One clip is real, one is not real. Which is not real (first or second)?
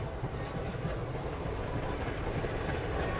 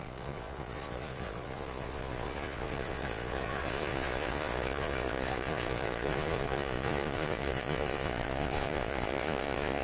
second